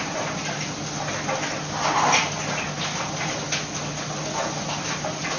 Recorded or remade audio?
recorded